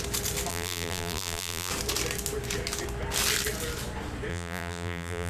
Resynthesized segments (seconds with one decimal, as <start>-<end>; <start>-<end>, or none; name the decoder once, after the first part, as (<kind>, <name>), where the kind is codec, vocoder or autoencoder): 0.5-1.7 (vocoder, BigVGAN v2); 4.3-5.3